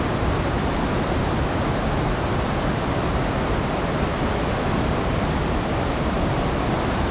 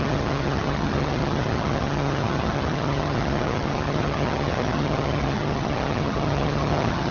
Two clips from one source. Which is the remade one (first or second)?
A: second